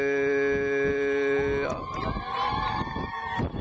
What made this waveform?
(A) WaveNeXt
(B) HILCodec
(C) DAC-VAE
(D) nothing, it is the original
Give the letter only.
D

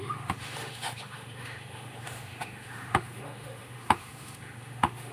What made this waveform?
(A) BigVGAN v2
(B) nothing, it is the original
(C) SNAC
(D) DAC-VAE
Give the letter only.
D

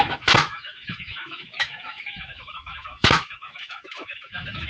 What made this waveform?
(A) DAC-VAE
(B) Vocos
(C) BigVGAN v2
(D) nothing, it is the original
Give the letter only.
A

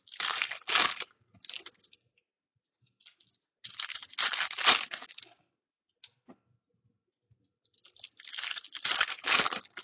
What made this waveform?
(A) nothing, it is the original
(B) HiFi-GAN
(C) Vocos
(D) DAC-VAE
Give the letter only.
A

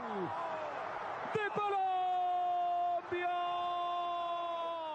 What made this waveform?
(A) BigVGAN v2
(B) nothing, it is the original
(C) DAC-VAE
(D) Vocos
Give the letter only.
B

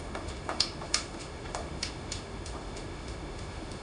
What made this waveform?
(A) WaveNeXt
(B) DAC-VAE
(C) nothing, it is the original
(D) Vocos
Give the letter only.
B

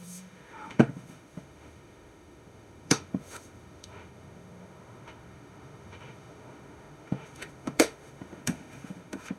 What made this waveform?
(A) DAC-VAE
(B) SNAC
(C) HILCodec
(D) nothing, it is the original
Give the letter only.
A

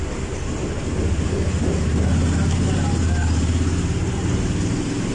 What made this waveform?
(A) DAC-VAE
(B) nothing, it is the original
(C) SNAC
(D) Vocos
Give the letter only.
B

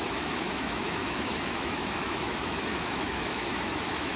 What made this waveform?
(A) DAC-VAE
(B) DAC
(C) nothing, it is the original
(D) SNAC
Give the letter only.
A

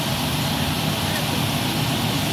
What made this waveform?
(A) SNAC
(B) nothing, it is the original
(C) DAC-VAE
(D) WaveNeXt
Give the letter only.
B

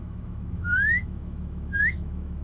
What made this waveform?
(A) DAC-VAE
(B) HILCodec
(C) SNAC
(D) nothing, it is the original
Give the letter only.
A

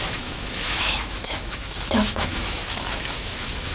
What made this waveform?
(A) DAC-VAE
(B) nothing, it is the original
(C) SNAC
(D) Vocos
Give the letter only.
A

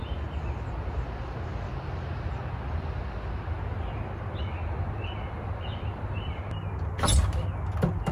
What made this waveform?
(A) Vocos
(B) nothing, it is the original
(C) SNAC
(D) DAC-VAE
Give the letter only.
B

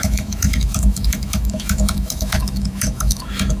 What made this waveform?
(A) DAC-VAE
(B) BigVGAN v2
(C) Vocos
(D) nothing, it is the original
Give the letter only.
A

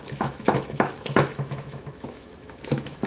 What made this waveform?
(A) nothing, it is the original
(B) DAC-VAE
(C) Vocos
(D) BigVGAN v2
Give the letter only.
B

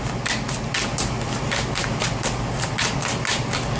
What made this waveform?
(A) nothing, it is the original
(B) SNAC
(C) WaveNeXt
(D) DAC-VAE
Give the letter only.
A